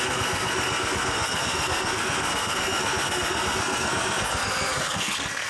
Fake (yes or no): yes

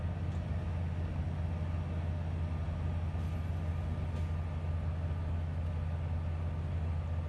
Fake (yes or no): no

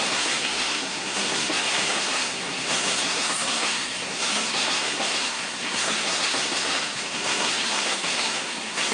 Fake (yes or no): yes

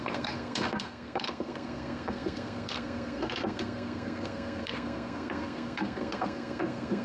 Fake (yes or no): yes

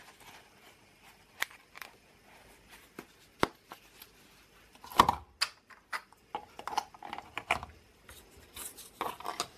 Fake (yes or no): no